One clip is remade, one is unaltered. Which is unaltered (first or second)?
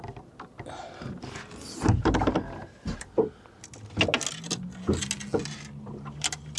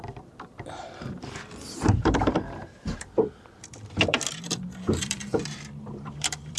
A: first